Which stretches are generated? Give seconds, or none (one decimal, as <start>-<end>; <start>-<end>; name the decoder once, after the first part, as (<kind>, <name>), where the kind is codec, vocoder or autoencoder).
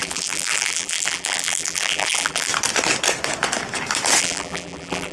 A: 0.0-2.5 (vocoder, BigVGAN v2); 4.2-5.1